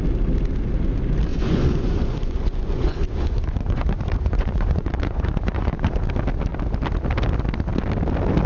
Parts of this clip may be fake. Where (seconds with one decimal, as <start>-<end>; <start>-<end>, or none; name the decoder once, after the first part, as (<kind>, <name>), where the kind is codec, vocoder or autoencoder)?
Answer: 1.3-5.9 (vocoder, Vocos)